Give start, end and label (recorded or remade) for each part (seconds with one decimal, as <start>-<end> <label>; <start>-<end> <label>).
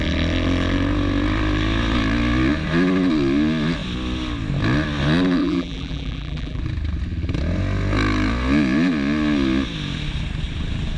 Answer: 0.0-5.4 recorded; 5.4-6.6 remade; 6.6-11.0 recorded